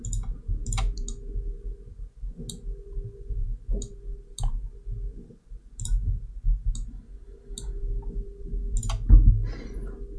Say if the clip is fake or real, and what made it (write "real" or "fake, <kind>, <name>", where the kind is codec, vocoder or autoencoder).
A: real